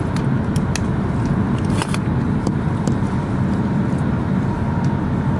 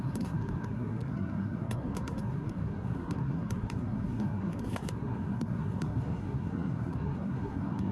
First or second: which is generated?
second